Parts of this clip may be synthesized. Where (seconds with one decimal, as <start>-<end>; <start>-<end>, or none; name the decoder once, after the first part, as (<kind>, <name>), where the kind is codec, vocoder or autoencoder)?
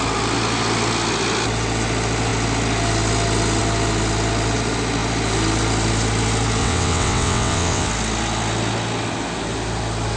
6.6-7.9 (vocoder, WaveNeXt)